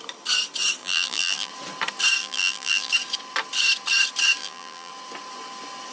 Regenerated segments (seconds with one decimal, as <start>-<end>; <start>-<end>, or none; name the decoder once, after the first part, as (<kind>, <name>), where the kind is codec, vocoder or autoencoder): 0.8-1.5 (vocoder, BigVGAN v2); 2.2-2.9; 4.4-4.9

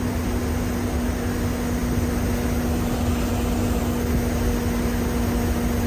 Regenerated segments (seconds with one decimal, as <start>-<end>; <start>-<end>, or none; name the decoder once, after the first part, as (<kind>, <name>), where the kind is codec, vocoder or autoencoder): none

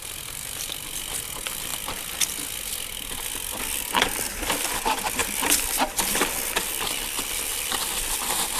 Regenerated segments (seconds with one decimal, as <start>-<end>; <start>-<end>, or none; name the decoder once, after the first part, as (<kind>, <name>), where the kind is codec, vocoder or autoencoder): 0.0-1.7 (vocoder, BigVGAN v2); 3.6-8.6

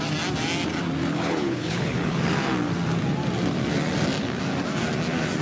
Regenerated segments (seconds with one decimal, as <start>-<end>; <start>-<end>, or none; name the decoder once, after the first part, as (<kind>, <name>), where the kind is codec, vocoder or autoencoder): 1.1-2.2 (codec, HILCodec)

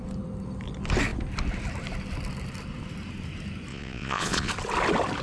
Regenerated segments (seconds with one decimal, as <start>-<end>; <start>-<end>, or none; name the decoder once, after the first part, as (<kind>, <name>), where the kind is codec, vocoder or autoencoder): 3.7-4.5 (vocoder, Vocos)